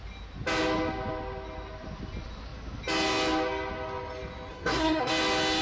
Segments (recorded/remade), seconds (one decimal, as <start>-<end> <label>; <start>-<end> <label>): 0.0-4.5 recorded; 4.5-5.1 remade; 5.1-5.6 recorded

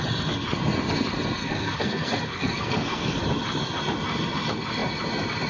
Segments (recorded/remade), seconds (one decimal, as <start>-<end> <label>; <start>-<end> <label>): 0.0-1.4 recorded; 1.4-3.2 remade; 3.2-5.5 recorded

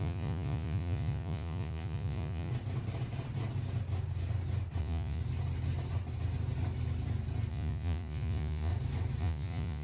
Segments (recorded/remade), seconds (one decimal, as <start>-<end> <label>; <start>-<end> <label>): 0.0-2.5 remade; 2.5-4.8 recorded; 4.8-5.2 remade; 5.2-7.5 recorded; 7.5-8.7 remade; 8.7-9.2 recorded; 9.2-9.8 remade

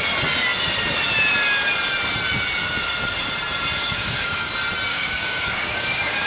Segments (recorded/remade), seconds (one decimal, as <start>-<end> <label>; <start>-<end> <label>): 0.0-3.8 recorded; 3.8-4.5 remade; 4.5-4.9 recorded; 4.9-6.3 remade

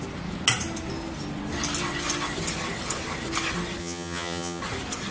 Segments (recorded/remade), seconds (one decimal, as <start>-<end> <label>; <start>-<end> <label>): 0.0-3.8 recorded; 3.8-4.6 remade; 4.6-5.1 recorded